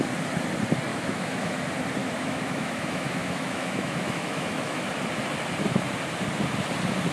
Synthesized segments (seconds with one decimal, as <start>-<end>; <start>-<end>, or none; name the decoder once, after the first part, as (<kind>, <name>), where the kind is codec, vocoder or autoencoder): 0.9-1.6 (autoencoder, DAC-VAE); 2.0-4.9